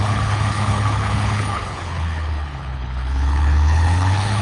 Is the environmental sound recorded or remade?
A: remade